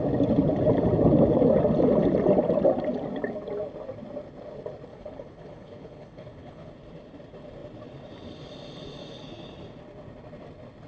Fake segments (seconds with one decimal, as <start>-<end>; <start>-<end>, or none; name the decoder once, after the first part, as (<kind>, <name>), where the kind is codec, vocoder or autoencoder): 4.9-6.7 (codec, HILCodec)